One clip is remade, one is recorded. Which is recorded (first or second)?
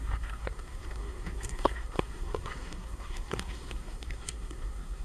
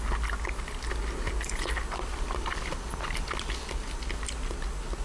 second